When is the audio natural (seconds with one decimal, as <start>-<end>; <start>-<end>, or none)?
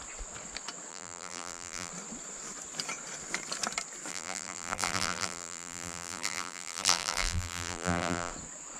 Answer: 0.0-0.9; 1.9-4.1; 8.3-8.8